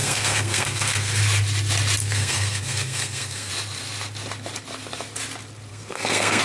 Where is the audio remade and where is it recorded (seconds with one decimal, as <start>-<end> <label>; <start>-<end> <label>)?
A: 0.0-1.2 remade; 1.2-2.0 recorded; 2.0-3.5 remade; 3.5-5.7 recorded; 5.7-6.4 remade